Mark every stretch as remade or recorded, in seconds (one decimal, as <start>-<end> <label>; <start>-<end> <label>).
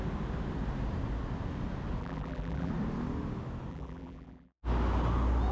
0.0-2.0 recorded; 2.0-2.7 remade; 2.7-3.7 recorded; 3.7-4.6 remade; 4.6-5.5 recorded